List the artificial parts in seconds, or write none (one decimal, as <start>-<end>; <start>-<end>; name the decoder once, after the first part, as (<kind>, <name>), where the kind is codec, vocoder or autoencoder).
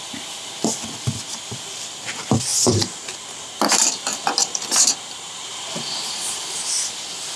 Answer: 2.5-6.6 (vocoder, BigVGAN v2)